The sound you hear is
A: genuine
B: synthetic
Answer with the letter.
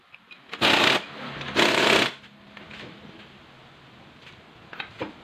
A